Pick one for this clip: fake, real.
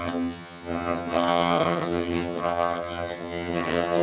fake